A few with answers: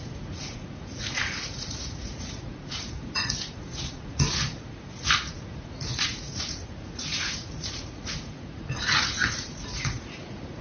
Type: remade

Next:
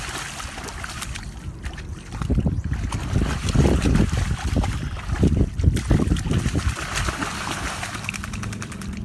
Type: recorded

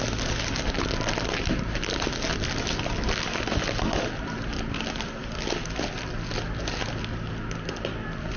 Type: recorded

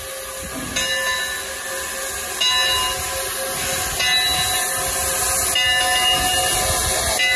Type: recorded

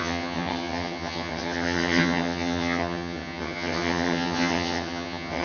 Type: remade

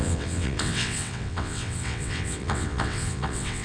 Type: remade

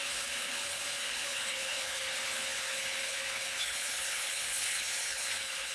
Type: remade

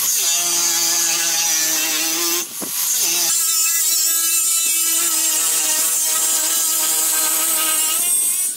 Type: recorded